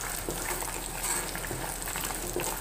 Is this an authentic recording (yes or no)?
yes